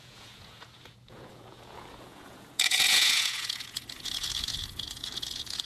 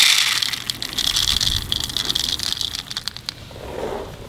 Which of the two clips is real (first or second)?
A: second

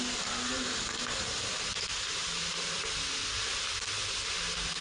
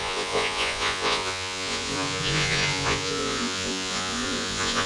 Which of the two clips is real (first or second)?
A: first